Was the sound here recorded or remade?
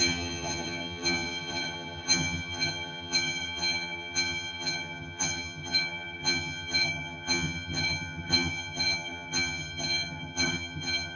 remade